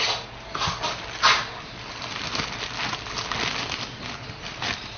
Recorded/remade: recorded